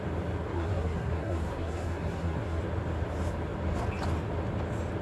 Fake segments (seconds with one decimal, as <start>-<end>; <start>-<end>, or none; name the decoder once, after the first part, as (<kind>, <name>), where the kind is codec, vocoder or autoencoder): 0.5-2.6 (codec, SNAC)